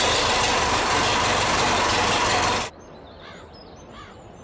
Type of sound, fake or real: real